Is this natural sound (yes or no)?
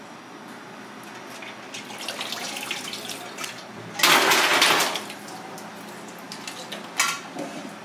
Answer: yes